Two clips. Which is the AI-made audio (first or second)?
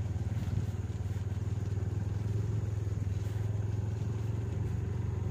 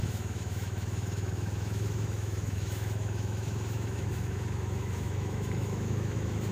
second